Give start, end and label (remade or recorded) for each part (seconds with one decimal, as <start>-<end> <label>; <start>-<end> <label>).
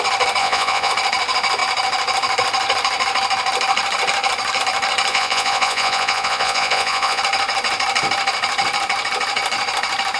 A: 0.0-0.4 recorded; 0.4-0.9 remade; 0.9-5.1 recorded; 5.1-7.2 remade; 7.2-10.2 recorded